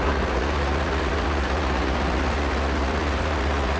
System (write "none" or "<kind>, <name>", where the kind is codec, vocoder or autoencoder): vocoder, Vocos